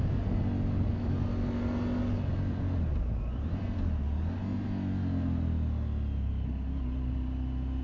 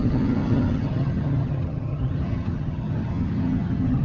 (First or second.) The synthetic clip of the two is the second